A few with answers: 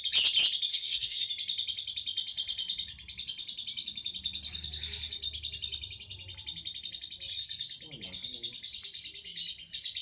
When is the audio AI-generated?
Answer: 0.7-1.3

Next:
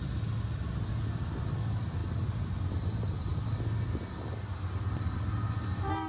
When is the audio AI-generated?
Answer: none

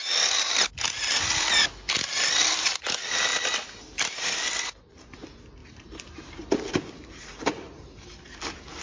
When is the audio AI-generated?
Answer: 5.6-6.7

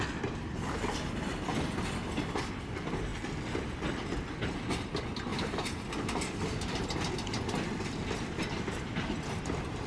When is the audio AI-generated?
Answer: 5.3-6.4